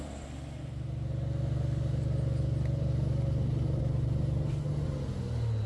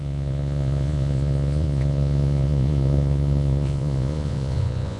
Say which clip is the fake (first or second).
second